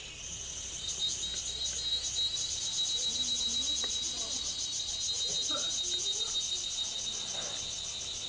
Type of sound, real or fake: real